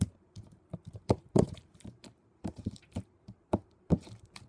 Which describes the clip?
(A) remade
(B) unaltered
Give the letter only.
A